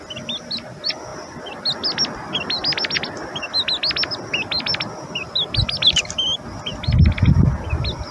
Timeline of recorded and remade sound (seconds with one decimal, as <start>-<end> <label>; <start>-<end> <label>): 0.0-8.1 recorded